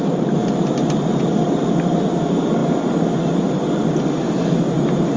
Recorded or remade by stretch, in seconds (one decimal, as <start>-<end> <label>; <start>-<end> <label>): 0.0-5.2 recorded